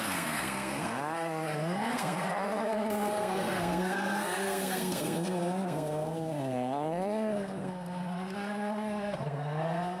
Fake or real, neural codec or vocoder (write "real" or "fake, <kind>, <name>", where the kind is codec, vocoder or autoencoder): fake, codec, SNAC